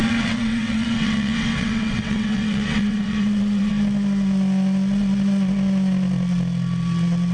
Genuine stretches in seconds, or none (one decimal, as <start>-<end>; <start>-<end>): 3.7-7.3

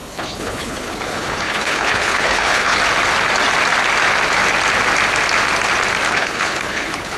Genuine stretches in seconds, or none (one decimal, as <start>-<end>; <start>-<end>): 2.8-6.1

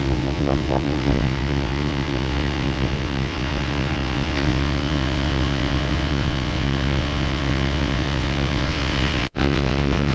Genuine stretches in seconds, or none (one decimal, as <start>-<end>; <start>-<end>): none

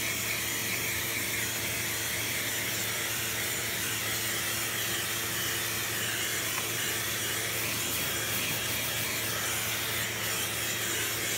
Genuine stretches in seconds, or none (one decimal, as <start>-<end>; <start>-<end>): 0.0-0.6; 4.0-6.3; 7.2-11.4

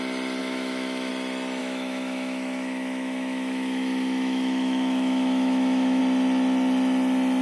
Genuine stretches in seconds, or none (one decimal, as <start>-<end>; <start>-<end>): 0.0-0.4; 1.1-1.6; 6.0-7.4

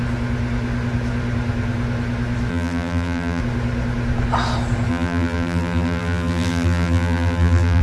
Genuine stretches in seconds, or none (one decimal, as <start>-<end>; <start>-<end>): 0.0-2.5; 3.4-4.9

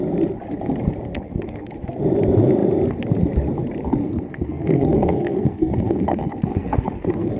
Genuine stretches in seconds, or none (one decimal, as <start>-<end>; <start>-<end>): 0.0-1.1; 1.7-4.0

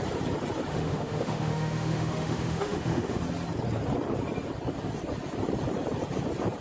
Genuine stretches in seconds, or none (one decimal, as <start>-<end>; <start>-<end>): 0.0-0.7; 3.2-6.6